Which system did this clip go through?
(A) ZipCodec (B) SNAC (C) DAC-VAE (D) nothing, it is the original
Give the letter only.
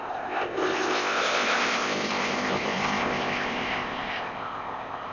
A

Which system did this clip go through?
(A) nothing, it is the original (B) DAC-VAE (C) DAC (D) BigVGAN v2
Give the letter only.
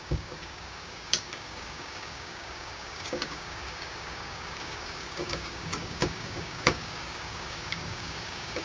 C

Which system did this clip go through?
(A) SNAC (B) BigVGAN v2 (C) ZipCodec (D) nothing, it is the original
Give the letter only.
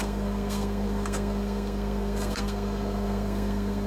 A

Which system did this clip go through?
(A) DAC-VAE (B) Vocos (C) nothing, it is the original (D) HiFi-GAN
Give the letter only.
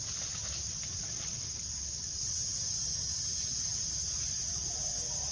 C